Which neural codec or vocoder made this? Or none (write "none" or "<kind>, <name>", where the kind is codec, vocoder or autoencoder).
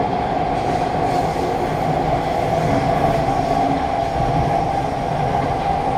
none